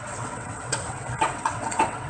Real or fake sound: fake